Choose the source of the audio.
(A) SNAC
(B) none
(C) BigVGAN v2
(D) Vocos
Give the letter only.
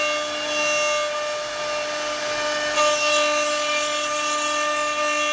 B